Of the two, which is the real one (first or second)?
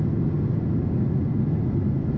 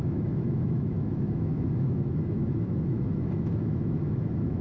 first